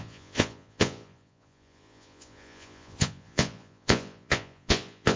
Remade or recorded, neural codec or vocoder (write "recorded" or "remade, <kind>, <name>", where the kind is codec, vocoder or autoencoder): remade, vocoder, Vocos